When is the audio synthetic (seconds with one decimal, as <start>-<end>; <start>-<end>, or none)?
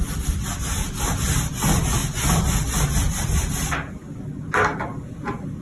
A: none